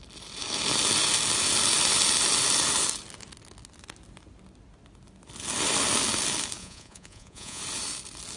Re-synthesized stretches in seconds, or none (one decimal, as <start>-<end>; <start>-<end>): 6.6-7.6